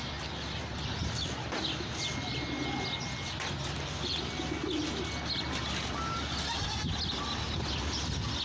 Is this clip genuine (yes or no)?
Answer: yes